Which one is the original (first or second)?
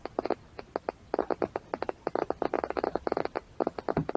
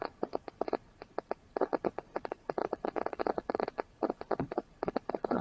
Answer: first